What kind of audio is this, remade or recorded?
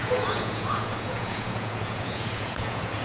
remade